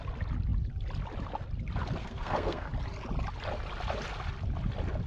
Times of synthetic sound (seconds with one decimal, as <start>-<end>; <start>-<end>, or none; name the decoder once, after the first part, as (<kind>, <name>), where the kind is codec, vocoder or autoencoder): 2.0-2.7 (codec, SNAC)